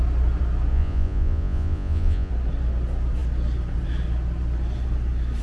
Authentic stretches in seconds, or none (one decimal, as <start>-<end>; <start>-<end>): 0.0-0.7; 2.3-5.4